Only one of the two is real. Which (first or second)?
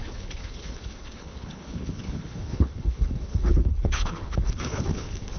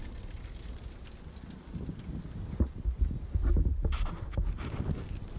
second